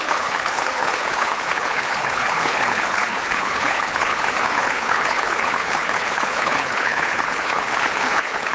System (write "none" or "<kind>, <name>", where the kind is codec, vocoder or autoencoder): codec, HILCodec